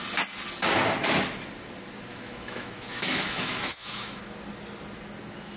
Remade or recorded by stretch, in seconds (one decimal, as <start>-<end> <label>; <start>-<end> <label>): 0.0-2.1 recorded; 2.1-4.2 remade; 4.2-5.6 recorded